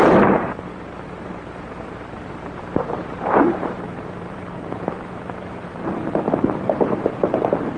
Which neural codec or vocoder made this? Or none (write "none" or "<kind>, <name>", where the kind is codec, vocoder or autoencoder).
vocoder, BigVGAN v2